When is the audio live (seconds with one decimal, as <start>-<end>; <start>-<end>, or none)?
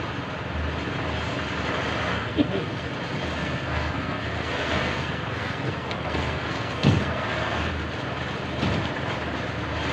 0.0-2.1; 2.9-3.4; 7.7-9.9